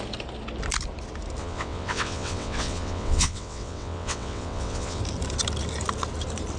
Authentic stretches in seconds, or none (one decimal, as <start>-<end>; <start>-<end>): 0.0-1.4; 5.0-6.6